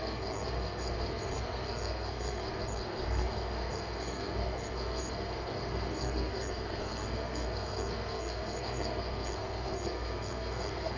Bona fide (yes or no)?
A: no